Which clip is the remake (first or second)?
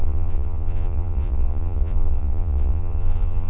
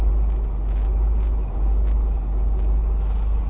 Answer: first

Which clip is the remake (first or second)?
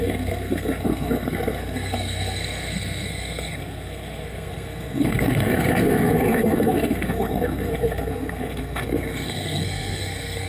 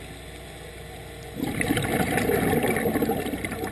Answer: first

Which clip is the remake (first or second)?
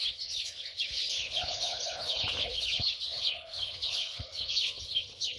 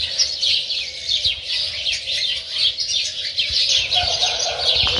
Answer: first